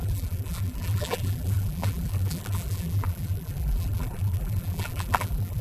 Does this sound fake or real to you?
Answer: fake